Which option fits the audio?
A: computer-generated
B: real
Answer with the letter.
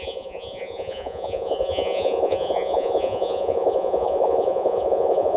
A